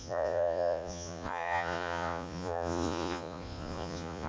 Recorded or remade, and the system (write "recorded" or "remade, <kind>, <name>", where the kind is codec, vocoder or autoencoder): remade, vocoder, Vocos